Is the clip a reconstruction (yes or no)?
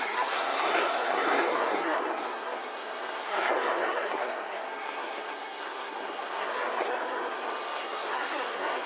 yes